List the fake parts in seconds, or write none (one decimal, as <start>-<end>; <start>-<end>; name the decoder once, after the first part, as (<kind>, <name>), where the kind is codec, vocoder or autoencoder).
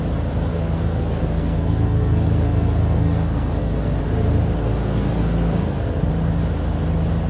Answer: 0.5-4.0 (codec, SNAC); 4.8-6.1